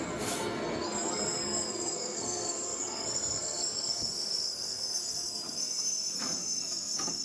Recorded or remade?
remade